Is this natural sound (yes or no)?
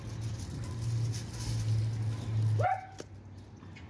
yes